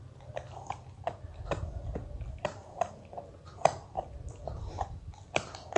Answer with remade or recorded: recorded